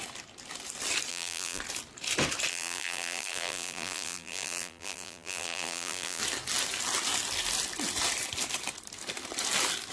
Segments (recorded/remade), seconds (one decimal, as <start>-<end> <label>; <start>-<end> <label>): 0.0-1.1 recorded; 1.1-1.6 remade; 1.6-2.5 recorded; 2.5-6.2 remade; 6.2-9.9 recorded

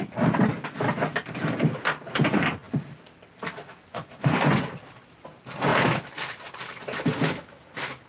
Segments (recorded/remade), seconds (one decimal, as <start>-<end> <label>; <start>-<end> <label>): 0.0-3.9 recorded; 3.9-4.7 remade; 4.7-8.1 recorded

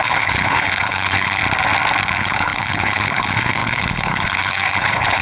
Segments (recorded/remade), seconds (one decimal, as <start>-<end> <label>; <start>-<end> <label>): 0.0-1.4 remade; 1.4-2.1 recorded; 2.1-5.2 remade

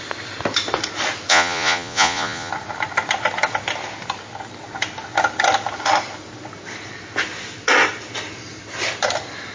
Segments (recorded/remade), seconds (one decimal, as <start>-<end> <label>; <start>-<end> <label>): 0.0-1.3 recorded; 1.3-2.5 remade; 2.5-9.5 recorded

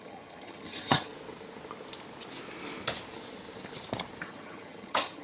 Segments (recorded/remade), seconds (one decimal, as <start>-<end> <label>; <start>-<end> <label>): 0.0-1.1 remade; 1.1-4.2 recorded; 4.2-5.2 remade

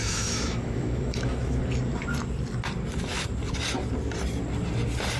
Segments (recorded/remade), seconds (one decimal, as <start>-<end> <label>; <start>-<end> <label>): 0.0-1.6 remade; 1.6-5.2 recorded